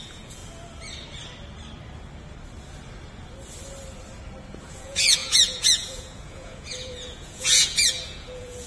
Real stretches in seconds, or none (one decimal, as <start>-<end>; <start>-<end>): 0.4-4.7